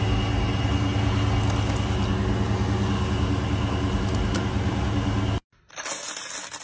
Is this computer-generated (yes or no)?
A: no